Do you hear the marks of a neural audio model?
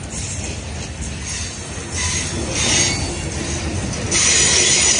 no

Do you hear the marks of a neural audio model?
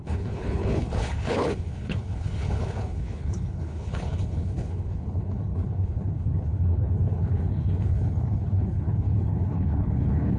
yes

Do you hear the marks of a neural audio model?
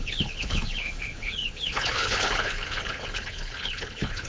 yes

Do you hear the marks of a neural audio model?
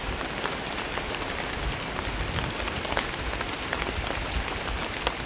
no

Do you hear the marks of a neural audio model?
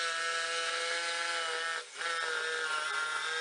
no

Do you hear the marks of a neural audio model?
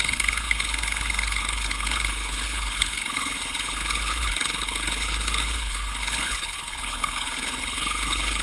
yes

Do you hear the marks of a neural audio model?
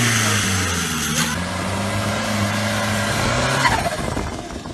no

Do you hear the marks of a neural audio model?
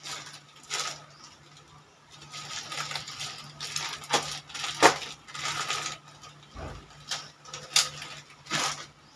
no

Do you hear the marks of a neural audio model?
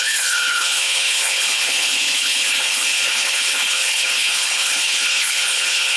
yes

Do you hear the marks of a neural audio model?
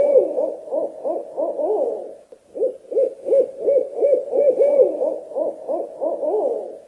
no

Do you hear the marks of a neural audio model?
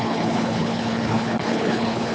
yes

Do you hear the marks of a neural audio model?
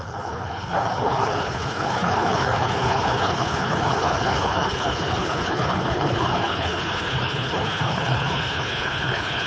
yes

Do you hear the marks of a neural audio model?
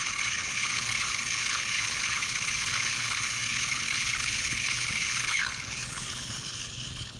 yes